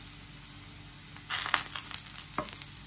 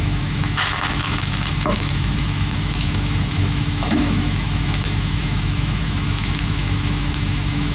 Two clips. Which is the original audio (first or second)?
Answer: first